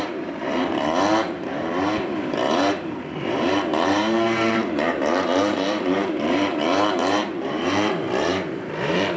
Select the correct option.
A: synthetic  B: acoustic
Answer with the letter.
A